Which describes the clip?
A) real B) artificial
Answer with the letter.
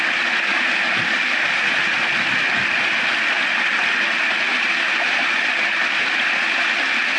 A